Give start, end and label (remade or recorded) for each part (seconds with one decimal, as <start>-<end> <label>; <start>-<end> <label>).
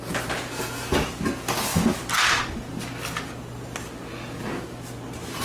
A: 0.0-5.4 recorded